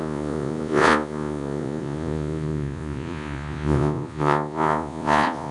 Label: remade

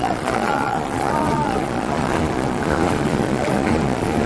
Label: remade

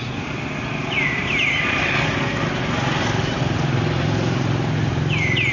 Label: recorded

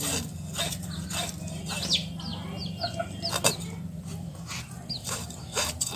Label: recorded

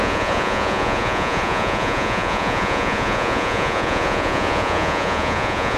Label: remade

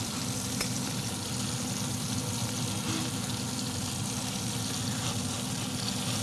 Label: recorded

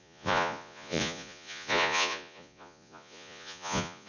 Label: remade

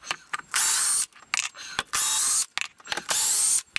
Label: recorded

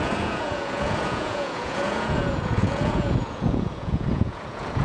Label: remade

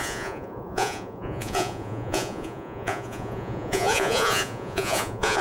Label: remade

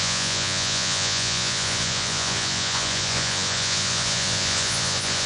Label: remade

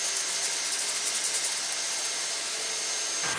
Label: recorded